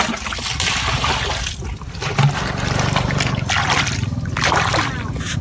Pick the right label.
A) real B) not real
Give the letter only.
A